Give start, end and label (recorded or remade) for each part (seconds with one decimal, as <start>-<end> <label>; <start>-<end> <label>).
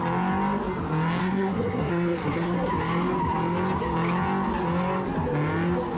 0.0-1.2 recorded; 1.2-2.7 remade; 2.7-6.0 recorded